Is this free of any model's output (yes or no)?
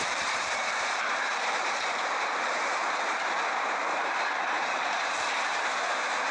no